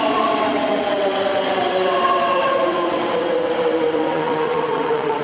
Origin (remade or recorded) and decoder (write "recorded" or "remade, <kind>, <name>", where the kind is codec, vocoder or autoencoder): remade, vocoder, WaveNeXt